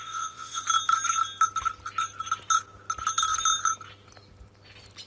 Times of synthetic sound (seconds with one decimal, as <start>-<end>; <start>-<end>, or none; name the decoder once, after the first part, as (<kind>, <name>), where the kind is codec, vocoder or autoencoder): 0.0-0.6 (vocoder, Vocos)